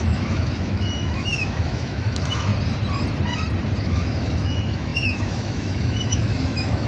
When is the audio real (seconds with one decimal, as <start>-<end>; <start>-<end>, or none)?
2.5-3.8